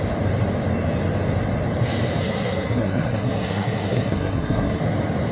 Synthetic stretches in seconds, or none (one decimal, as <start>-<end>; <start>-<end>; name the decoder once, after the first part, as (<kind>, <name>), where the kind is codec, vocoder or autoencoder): 2.2-4.8 (codec, SNAC)